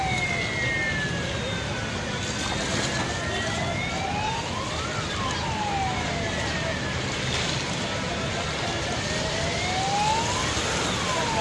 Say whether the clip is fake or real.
real